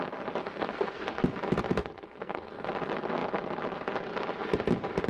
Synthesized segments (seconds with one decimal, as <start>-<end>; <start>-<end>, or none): 0.4-1.2; 1.8-2.7